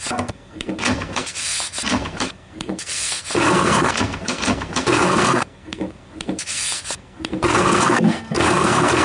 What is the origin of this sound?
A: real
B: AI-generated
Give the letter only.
B